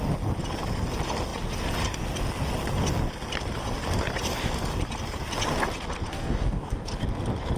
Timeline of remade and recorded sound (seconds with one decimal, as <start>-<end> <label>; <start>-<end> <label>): 0.0-6.1 recorded; 6.1-6.9 remade; 6.9-7.6 recorded